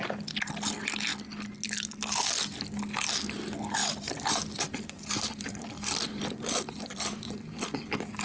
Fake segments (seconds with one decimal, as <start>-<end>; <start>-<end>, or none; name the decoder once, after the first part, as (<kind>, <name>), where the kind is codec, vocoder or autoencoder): 3.8-7.3 (vocoder, BigVGAN v2)